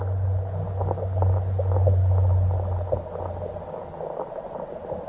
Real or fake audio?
real